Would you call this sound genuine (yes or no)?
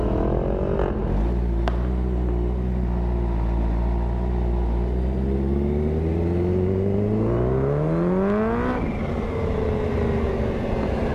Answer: yes